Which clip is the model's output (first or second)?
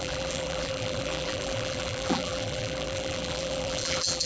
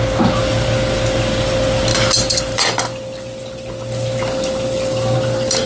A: first